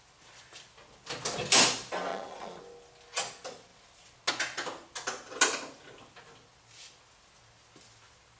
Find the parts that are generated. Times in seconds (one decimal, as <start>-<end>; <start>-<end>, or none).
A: 2.1-2.6